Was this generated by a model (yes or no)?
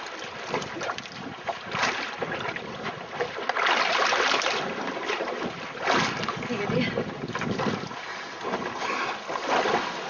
no